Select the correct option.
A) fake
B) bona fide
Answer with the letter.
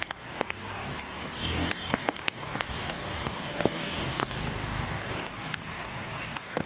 A